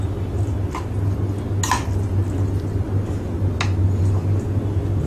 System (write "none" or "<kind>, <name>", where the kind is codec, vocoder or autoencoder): none